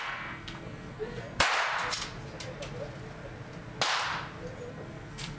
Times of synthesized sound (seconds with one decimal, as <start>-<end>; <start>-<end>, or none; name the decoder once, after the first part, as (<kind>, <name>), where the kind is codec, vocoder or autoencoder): 0.0-1.5 (codec, SNAC); 4.7-5.4